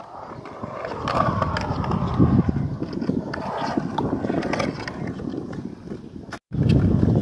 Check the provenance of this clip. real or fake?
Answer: real